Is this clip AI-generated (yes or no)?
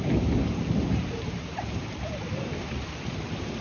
yes